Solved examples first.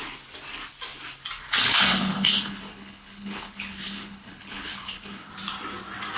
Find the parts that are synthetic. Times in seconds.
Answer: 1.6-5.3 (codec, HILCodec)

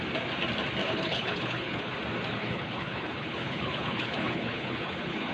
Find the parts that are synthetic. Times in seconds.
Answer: 0.8-1.9 (codec, HILCodec); 2.3-5.3

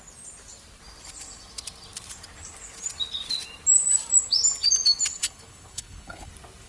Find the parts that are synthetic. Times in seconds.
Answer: 5.1-6.3 (codec, HILCodec)

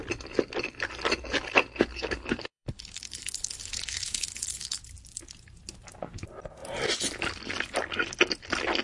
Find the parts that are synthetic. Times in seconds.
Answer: 1.9-4.8 (codec, HILCodec)

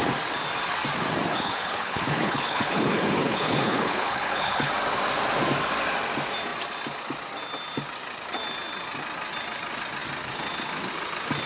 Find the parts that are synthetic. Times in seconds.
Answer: 1.3-4.7 (codec, HILCodec)

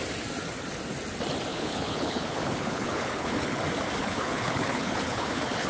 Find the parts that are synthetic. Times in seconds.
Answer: 1.5-3.6 (codec, HILCodec); 4.0-5.7